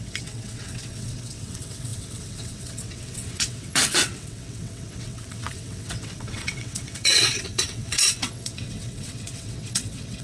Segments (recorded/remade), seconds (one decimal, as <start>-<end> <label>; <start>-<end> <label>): 0.0-10.2 remade